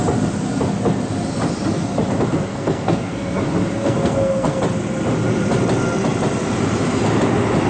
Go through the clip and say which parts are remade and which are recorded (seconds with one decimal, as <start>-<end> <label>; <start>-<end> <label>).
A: 0.0-2.5 recorded; 2.5-3.4 remade; 3.4-3.8 recorded; 3.8-4.6 remade; 4.6-7.7 recorded